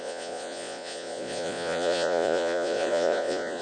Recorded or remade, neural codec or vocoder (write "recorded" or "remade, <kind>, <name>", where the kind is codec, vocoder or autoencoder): remade, vocoder, Vocos